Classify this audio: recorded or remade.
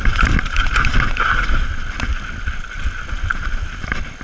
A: recorded